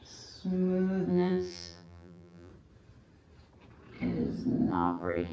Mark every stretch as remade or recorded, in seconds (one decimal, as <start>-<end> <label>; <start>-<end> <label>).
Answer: 0.0-1.1 recorded; 1.1-2.5 remade; 2.5-4.7 recorded; 4.7-5.3 remade